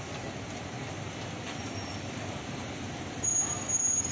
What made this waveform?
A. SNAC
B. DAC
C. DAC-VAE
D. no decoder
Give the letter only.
D